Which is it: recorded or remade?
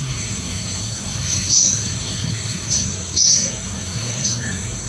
remade